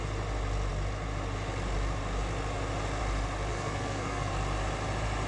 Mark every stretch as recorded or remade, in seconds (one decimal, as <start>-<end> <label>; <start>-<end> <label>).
0.0-3.5 recorded; 3.5-4.3 remade; 4.3-5.3 recorded